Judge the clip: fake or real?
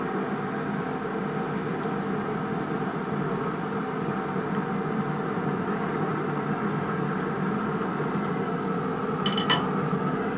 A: real